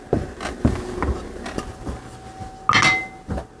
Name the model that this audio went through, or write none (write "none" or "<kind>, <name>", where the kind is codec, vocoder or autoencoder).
none